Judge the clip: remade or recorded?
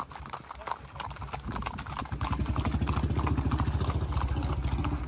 recorded